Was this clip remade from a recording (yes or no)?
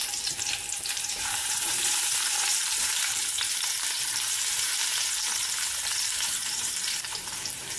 yes